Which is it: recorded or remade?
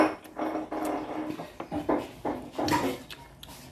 recorded